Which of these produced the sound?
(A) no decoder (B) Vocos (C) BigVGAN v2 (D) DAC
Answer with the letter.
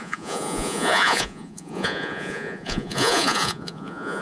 B